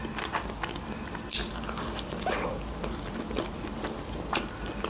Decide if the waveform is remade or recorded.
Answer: recorded